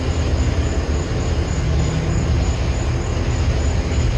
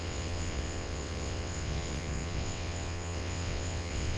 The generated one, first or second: second